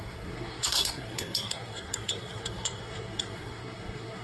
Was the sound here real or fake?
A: fake